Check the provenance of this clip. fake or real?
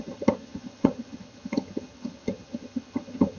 fake